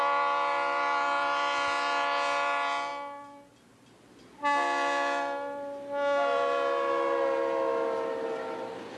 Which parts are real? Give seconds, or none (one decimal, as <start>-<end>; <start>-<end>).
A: 0.0-9.0

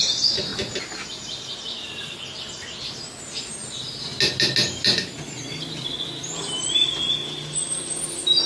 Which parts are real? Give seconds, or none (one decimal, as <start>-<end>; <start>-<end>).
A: 0.0-8.5

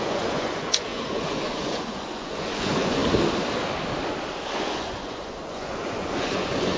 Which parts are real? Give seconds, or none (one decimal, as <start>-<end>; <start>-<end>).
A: 3.0-4.5

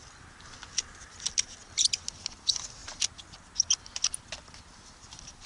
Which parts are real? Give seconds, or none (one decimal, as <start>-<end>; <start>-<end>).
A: 0.0-5.5